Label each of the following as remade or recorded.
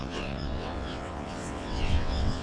remade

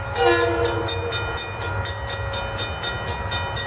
recorded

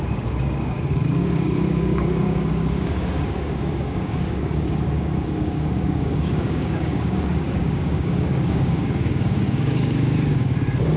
remade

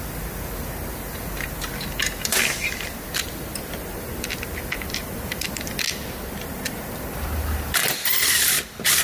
recorded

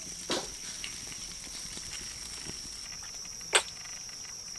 recorded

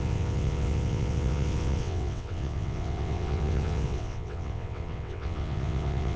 remade